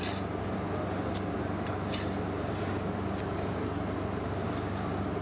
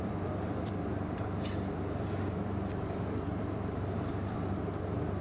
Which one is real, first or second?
first